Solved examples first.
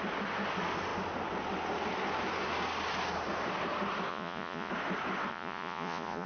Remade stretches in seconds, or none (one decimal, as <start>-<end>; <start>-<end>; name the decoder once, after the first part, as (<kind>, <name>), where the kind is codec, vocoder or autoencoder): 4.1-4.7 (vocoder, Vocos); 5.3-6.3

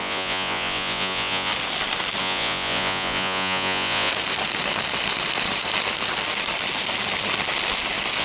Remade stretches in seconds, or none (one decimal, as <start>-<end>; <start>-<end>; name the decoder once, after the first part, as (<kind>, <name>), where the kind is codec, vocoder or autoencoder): 0.0-1.5 (vocoder, Vocos); 2.2-4.1

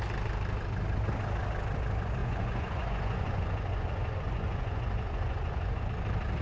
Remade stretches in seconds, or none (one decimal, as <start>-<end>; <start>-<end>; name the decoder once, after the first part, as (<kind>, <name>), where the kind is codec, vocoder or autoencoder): 2.2-5.8 (vocoder, Vocos)

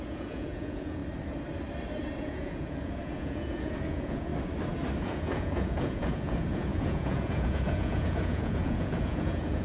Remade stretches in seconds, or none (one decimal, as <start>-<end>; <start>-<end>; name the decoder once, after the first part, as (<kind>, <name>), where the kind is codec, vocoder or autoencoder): 0.0-1.0 (vocoder, Vocos); 2.2-4.3; 5.0-9.6

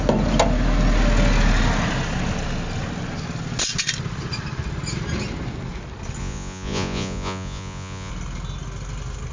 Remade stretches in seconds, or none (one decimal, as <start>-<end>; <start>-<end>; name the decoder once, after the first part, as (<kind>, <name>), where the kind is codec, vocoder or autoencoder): 6.2-8.1 (vocoder, Vocos)

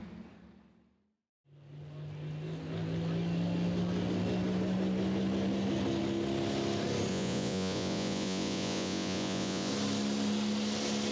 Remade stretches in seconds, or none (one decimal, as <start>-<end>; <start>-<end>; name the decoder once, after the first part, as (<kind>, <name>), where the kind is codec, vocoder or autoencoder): 7.1-9.7 (vocoder, Vocos)

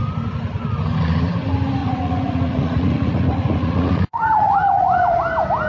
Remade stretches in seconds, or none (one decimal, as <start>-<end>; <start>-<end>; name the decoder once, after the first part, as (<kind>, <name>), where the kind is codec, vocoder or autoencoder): 1.8-5.2 (vocoder, Vocos)